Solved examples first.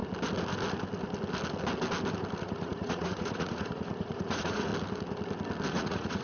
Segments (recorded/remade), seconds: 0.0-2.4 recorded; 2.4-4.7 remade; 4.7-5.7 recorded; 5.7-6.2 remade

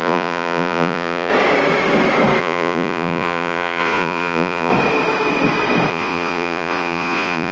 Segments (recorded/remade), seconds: 0.0-1.3 remade; 1.3-2.4 recorded; 2.4-4.7 remade; 4.7-5.9 recorded; 5.9-7.5 remade

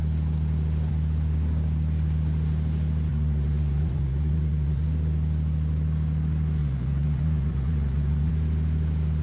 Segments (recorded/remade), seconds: 0.0-3.1 recorded; 3.1-4.8 remade; 4.8-6.6 recorded; 6.6-8.3 remade; 8.3-9.2 recorded

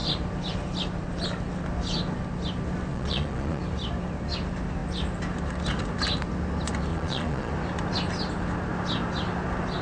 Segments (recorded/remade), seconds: 0.0-2.9 recorded; 2.9-3.6 remade; 3.6-6.9 recorded; 6.9-7.5 remade; 7.5-9.8 recorded